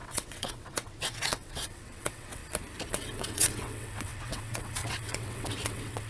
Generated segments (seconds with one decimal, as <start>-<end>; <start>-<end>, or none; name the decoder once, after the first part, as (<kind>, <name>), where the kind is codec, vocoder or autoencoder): 0.0-2.4 (vocoder, WaveNeXt); 2.9-6.1